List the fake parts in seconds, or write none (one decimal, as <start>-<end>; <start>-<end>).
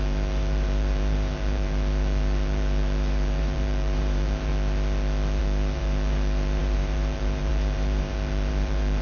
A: 0.0-4.5; 5.4-9.0